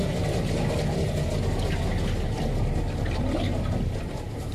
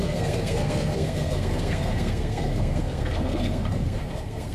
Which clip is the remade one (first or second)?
second